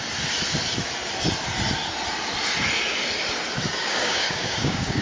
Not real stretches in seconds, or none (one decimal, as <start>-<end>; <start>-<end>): 3.8-5.0